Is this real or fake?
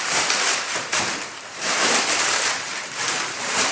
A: fake